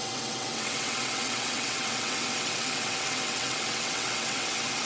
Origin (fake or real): fake